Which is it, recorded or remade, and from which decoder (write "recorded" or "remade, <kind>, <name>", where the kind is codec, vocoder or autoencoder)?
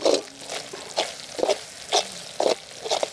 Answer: recorded